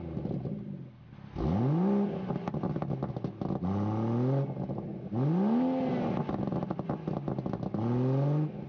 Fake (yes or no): no